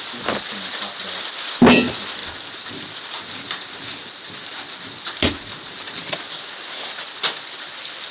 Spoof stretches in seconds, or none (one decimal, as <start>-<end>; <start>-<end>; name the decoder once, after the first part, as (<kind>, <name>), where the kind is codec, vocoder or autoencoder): 2.2-6.1 (vocoder, BigVGAN v2)